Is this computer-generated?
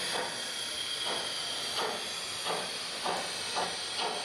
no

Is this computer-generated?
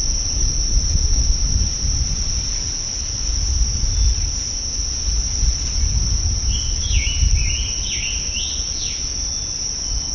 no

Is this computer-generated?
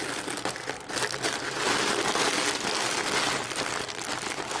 no